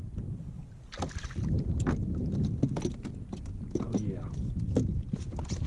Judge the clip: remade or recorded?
recorded